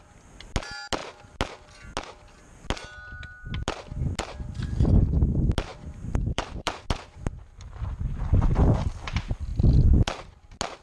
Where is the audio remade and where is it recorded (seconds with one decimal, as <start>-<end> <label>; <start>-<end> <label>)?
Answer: 0.0-5.7 recorded; 5.7-6.7 remade; 6.7-9.5 recorded; 9.5-10.0 remade; 10.0-10.8 recorded